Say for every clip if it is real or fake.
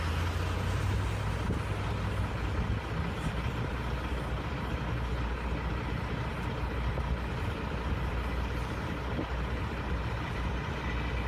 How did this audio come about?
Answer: real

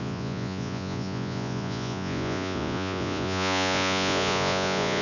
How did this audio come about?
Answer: fake